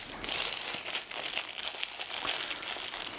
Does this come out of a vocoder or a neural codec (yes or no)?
no